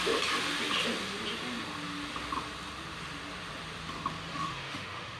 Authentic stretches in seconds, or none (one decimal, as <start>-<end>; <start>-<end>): 0.0-4.3